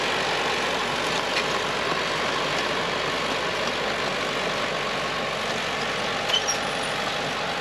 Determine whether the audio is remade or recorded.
recorded